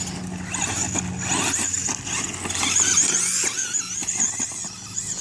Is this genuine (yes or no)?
yes